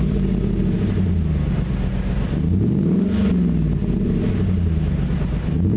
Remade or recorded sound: recorded